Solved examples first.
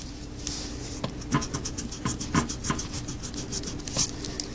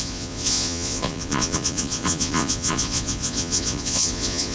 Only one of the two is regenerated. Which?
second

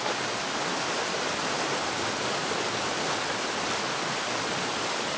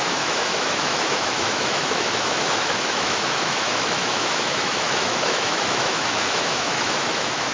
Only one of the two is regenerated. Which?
second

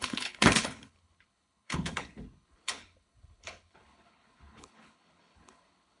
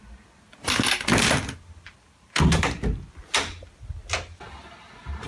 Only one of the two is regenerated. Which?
first